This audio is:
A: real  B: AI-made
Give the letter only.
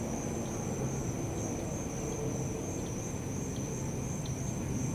A